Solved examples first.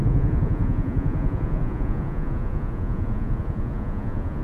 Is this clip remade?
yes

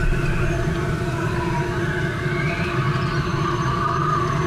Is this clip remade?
no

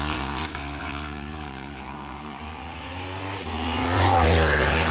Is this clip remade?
yes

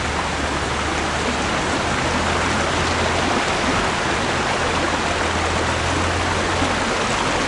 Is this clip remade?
no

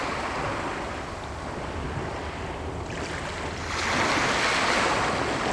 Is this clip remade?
no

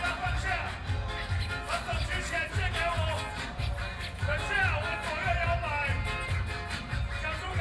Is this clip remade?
no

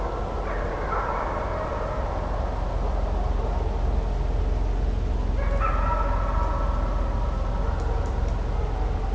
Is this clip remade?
no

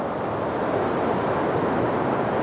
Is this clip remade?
no